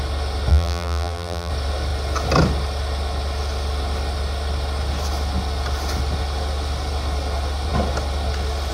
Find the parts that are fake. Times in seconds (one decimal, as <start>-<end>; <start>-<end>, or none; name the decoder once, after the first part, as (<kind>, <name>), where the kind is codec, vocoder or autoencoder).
0.5-1.5 (vocoder, BigVGAN v2)

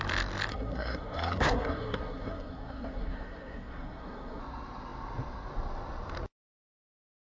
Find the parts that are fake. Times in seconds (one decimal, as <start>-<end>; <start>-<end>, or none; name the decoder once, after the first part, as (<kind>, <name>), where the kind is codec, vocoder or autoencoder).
0.5-4.4 (codec, SNAC)